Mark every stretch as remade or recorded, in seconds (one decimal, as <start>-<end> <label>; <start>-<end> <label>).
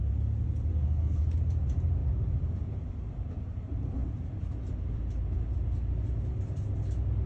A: 0.0-0.7 recorded; 0.7-1.2 remade; 1.2-7.3 recorded